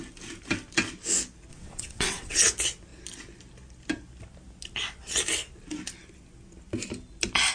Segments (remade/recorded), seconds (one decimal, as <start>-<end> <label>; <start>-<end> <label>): 0.0-1.5 recorded; 1.5-2.4 remade; 2.4-7.5 recorded